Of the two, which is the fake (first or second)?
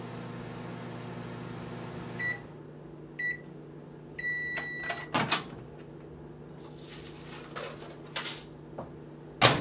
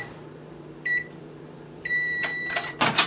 second